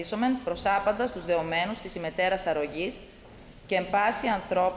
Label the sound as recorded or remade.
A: recorded